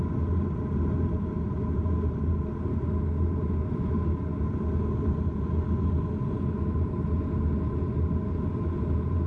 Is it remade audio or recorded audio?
recorded